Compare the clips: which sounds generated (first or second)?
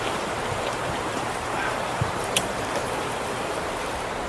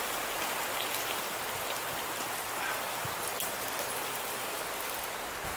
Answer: first